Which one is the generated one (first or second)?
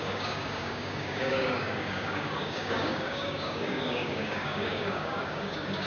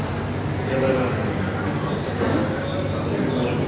first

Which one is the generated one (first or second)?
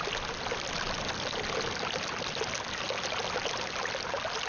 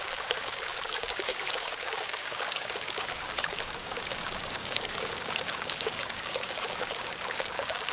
second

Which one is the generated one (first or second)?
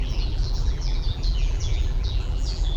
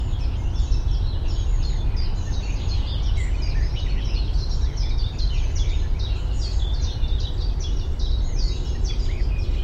first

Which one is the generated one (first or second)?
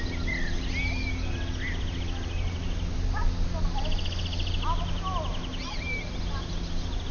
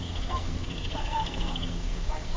second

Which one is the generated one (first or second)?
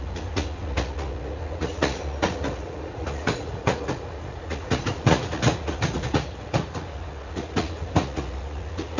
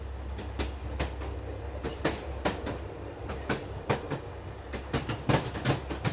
first